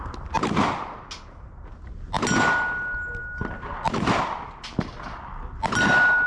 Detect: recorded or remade recorded